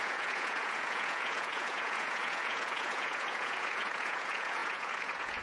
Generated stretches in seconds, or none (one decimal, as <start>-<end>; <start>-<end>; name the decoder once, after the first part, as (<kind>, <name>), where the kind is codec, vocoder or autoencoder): 0.0-5.4 (vocoder, Vocos)